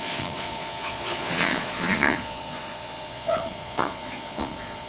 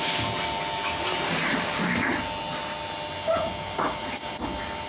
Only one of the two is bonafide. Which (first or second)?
second